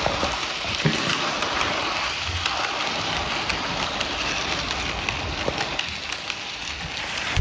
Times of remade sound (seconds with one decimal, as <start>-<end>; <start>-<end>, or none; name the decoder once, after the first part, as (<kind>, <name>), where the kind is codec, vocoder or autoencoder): 0.0-5.7 (vocoder, BigVGAN v2); 6.9-7.4